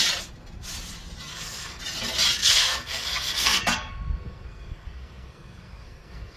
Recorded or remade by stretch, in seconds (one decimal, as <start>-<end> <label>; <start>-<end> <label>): 0.0-1.3 recorded; 1.3-1.8 remade; 1.8-2.4 recorded; 2.4-6.4 remade